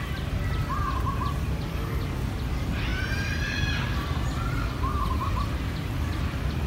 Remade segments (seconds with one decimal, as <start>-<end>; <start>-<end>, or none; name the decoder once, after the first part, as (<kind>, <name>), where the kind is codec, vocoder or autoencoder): none